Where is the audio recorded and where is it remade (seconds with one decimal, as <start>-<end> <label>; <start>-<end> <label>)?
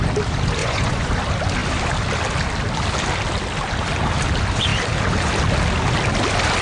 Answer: 0.0-0.6 recorded; 0.6-1.1 remade; 1.1-6.6 recorded